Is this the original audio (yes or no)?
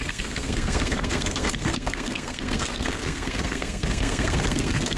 no